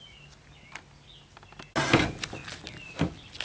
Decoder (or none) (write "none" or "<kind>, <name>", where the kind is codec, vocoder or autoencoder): none